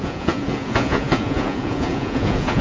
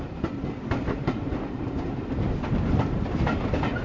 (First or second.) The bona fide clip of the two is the second